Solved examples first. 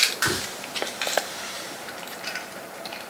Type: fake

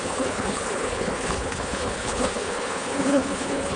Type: fake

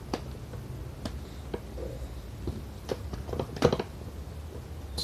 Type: real